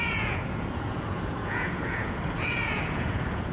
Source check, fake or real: fake